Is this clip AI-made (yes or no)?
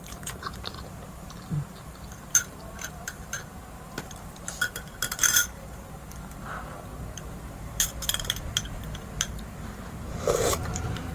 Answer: yes